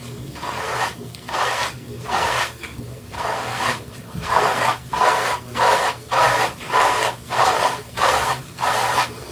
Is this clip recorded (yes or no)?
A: no